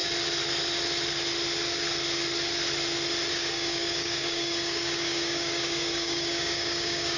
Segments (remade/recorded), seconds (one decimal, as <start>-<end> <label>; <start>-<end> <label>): 0.0-3.3 recorded; 3.3-7.2 remade